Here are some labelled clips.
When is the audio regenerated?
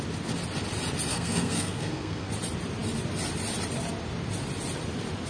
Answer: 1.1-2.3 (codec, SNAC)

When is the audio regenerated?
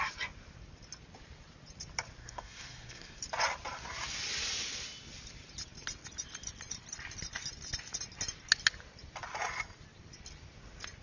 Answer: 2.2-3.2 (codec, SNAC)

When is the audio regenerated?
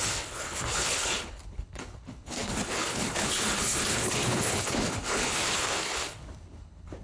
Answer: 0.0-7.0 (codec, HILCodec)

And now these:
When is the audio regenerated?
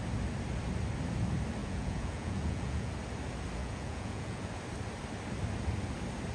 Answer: 1.6-2.9 (vocoder, Vocos); 3.6-4.5